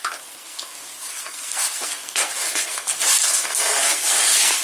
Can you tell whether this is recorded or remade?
remade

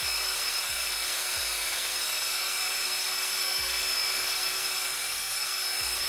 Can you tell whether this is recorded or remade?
remade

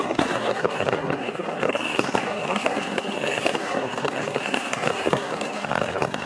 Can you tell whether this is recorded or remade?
remade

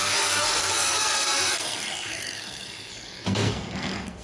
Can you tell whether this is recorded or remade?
remade